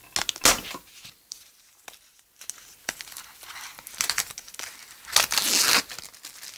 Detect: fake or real real